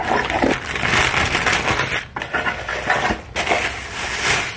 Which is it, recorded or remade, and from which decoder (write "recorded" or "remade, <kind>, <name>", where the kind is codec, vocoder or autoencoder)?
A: recorded